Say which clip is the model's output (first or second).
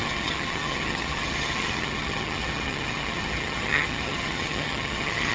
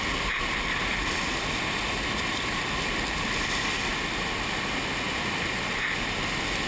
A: first